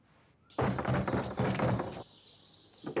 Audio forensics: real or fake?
real